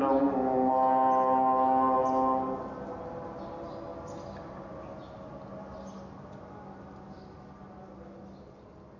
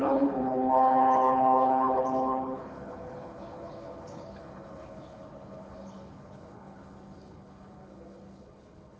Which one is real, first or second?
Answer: first